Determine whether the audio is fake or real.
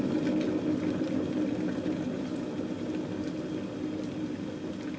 real